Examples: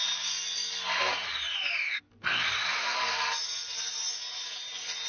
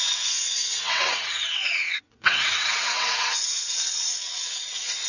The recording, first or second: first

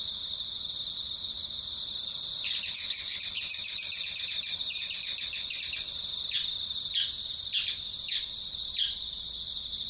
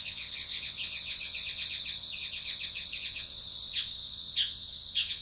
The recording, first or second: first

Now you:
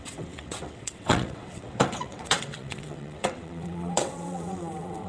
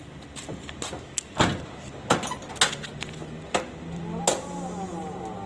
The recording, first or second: second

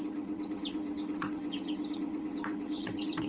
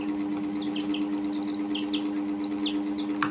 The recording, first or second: second